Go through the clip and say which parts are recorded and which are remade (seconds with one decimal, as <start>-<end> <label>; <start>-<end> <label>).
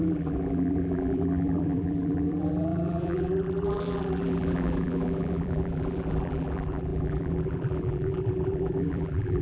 0.0-9.4 remade